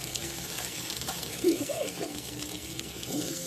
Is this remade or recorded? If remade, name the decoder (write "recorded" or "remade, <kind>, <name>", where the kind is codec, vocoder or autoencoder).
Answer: remade, codec, SNAC